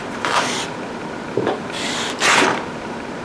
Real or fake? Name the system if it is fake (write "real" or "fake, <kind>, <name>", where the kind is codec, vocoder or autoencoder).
fake, vocoder, BigVGAN v2